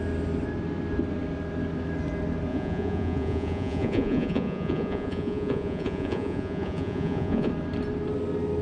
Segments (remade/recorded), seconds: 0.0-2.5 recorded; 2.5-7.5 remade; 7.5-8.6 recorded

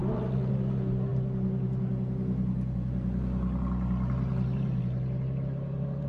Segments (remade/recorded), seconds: 0.0-6.1 recorded

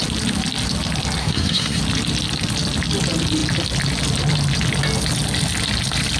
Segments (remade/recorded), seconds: 0.0-1.2 recorded; 1.2-1.8 remade; 1.8-6.2 recorded

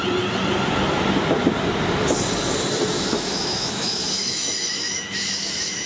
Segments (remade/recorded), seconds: 0.0-2.9 recorded; 2.9-5.9 remade

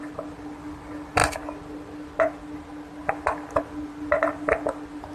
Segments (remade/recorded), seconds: 0.0-5.1 recorded

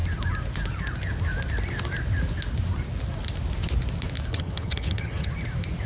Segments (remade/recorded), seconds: 0.0-4.3 recorded; 4.3-5.3 remade; 5.3-5.9 recorded

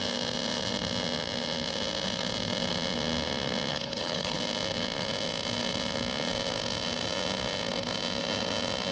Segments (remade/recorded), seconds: 0.0-3.7 recorded; 3.7-4.4 remade; 4.4-8.9 recorded